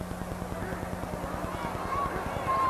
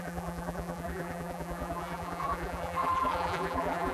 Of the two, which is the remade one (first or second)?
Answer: second